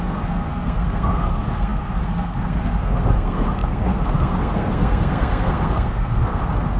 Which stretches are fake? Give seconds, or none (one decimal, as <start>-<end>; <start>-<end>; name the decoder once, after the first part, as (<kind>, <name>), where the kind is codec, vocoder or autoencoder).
0.0-6.8 (codec, SNAC)